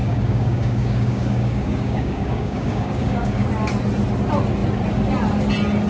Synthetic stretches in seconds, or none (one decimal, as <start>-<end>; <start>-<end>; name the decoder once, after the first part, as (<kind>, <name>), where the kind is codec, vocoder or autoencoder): 0.0-3.5 (codec, DAC)

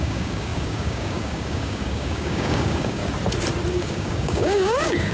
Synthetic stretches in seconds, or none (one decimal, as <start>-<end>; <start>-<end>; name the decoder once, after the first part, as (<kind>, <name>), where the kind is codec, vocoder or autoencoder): 0.0-3.0 (codec, DAC); 3.7-5.1

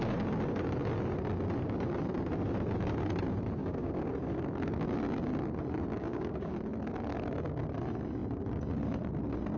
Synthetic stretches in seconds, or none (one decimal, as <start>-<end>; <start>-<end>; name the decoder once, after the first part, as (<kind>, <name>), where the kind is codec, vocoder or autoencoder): 3.6-4.1 (codec, DAC); 5.9-6.5